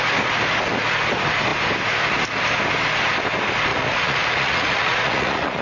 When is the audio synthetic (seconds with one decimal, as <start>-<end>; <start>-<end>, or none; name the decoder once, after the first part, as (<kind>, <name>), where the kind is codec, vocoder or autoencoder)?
3.7-5.6 (vocoder, Vocos)